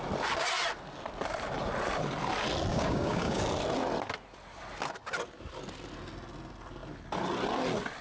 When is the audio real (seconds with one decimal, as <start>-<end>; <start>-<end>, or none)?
0.0-2.7; 3.4-8.0